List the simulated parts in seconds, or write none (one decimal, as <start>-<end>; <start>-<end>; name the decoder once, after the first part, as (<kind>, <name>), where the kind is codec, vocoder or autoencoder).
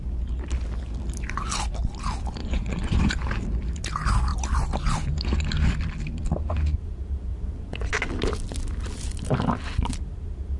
2.4-3.1 (vocoder, Vocos); 7.3-7.9